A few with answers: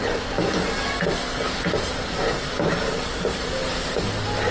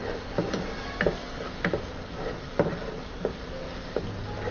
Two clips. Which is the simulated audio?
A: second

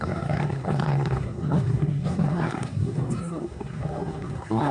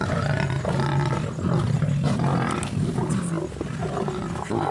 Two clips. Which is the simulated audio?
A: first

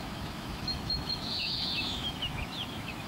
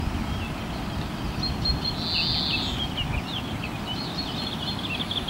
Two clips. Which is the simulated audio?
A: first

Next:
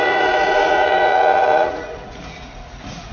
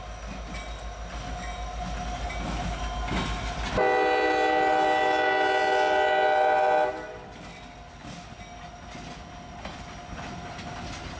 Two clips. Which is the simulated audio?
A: first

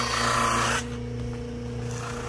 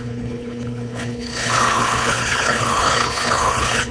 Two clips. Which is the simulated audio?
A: second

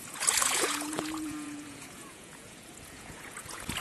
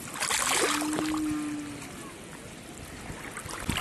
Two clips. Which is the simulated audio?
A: first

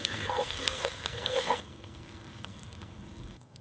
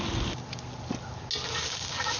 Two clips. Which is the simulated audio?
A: first